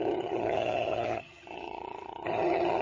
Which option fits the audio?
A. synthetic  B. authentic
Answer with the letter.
A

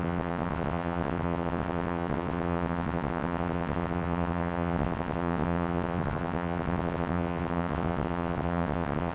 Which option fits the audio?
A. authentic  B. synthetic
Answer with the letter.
B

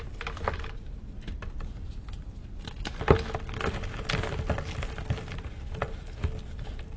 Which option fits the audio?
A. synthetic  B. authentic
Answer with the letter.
B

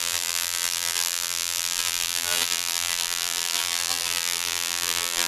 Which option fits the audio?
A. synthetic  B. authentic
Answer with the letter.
A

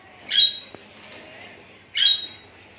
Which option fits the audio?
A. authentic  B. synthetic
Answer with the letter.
A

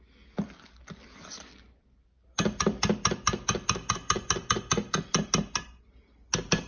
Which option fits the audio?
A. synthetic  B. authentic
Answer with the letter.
B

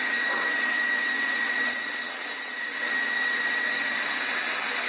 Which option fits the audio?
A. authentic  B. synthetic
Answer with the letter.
B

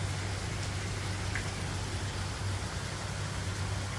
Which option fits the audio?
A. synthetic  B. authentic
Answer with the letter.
B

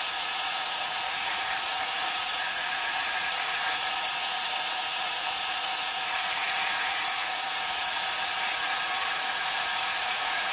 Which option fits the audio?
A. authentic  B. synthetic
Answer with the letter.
B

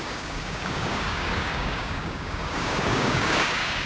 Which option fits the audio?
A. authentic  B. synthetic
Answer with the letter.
B